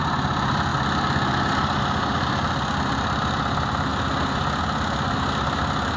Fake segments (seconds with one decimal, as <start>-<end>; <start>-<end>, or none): none